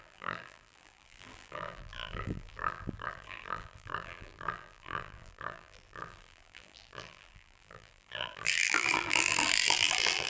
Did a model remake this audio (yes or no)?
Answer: yes